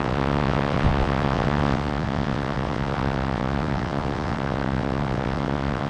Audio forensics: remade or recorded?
remade